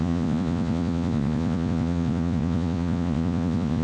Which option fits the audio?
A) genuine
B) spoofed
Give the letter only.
B